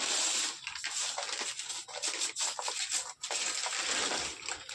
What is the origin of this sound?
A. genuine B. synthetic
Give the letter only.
A